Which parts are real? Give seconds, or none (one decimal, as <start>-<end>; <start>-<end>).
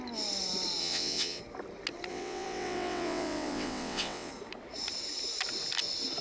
0.0-0.8; 1.4-2.1; 4.3-6.2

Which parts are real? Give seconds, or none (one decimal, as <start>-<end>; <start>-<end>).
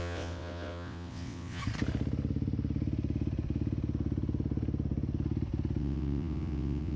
1.6-5.8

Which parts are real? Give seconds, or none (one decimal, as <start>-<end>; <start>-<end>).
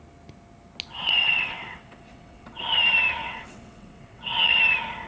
0.0-1.0; 2.6-3.2; 4.6-5.1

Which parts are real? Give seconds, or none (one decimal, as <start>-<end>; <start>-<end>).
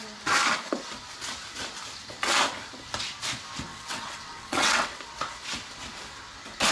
0.0-3.7; 5.0-6.7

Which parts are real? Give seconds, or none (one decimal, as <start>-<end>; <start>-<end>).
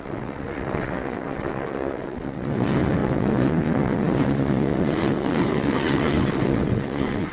none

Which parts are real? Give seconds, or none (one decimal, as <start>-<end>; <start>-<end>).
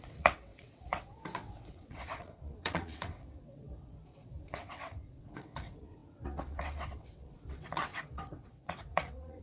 none